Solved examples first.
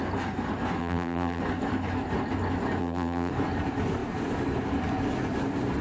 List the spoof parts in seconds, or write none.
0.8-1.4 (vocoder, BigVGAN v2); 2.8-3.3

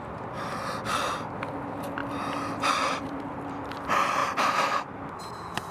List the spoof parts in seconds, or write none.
4.2-5.2 (vocoder, BigVGAN v2)

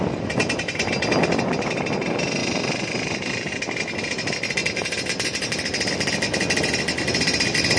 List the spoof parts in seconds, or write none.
2.4-3.6 (vocoder, BigVGAN v2)